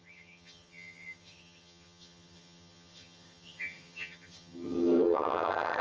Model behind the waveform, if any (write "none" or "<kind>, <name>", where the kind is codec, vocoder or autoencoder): vocoder, HiFi-GAN